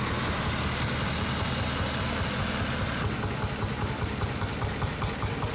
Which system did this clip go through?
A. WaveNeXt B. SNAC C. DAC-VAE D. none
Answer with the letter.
D